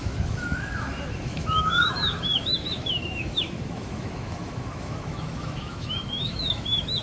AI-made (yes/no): yes